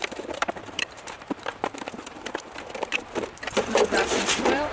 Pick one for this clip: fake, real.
fake